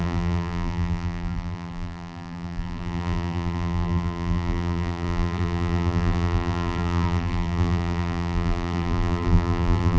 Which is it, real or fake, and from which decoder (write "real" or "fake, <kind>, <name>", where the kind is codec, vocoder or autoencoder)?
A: fake, vocoder, BigVGAN v2